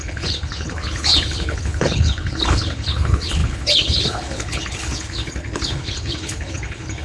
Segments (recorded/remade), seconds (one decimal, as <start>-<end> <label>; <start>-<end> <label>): 0.0-7.0 remade